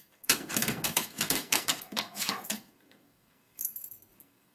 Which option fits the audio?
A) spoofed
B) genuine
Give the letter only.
A